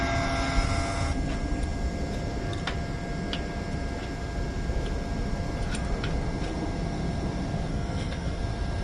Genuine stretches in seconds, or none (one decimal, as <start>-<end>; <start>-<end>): 0.0-7.7; 8.4-8.8